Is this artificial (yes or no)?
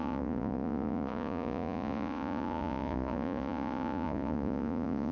yes